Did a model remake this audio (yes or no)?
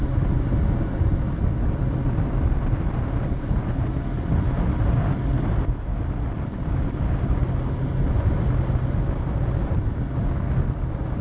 no